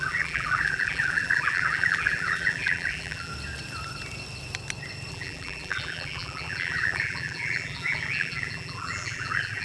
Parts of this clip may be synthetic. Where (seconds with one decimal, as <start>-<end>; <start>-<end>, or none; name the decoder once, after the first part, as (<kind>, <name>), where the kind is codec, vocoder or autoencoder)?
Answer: 0.0-3.3 (vocoder, BigVGAN v2); 5.1-9.6